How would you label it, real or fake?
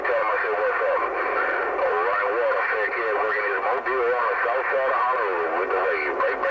real